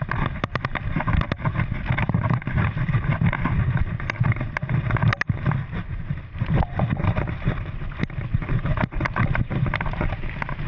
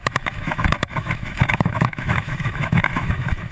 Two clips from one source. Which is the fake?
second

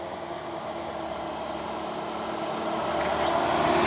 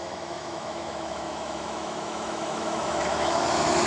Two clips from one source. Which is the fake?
second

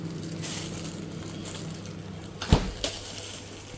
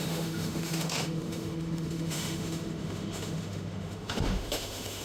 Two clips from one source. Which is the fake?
second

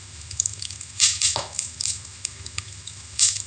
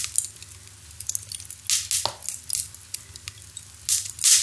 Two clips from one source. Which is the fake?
first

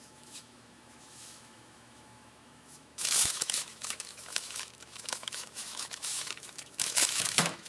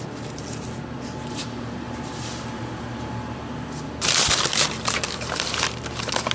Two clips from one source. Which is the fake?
first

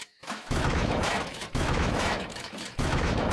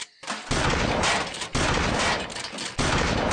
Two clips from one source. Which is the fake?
first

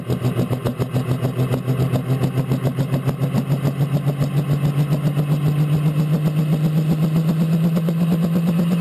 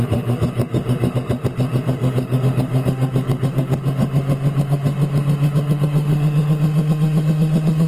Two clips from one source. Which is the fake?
second